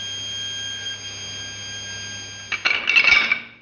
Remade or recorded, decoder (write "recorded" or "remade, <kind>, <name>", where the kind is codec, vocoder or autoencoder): recorded